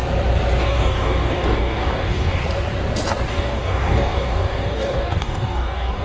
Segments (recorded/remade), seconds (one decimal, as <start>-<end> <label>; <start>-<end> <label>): 0.0-0.6 recorded; 0.6-2.4 remade; 2.4-3.3 recorded; 3.3-6.0 remade